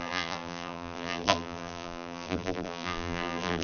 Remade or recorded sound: remade